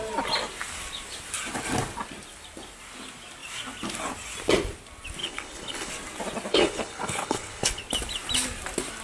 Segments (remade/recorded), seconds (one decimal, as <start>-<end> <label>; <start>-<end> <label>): 0.0-5.2 recorded; 5.2-5.9 remade; 5.9-6.5 recorded; 6.5-7.8 remade; 7.8-9.0 recorded